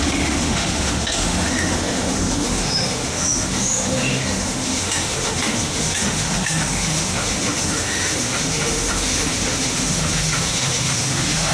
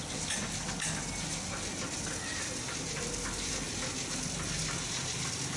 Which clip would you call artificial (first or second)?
first